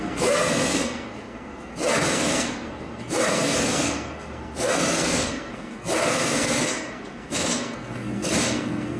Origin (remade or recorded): remade